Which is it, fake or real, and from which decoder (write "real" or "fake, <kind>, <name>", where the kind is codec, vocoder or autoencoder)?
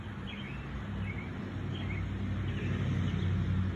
real